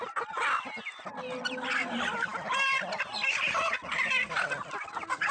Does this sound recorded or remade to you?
recorded